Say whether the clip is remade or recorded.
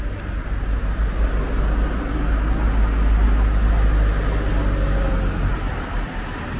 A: recorded